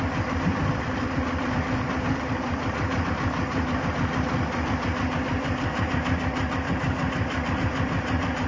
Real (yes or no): yes